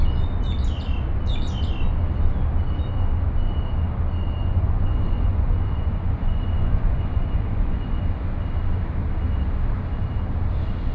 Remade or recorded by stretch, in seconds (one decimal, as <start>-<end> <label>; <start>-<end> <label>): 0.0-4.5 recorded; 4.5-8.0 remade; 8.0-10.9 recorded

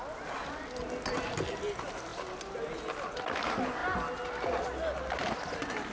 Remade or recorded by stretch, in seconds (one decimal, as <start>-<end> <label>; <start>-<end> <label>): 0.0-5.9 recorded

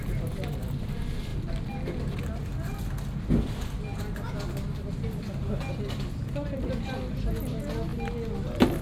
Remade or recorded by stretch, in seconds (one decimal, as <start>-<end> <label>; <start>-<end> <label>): 0.0-8.8 recorded